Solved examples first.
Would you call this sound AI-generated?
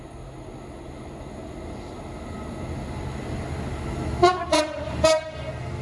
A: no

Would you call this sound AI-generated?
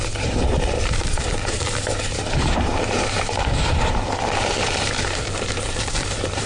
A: yes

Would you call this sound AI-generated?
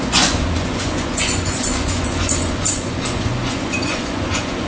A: yes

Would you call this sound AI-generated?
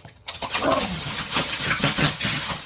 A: yes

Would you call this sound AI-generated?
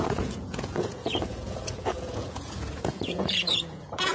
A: yes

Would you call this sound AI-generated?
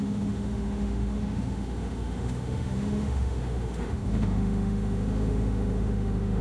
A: yes